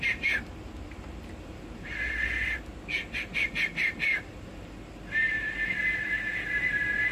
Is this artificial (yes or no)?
no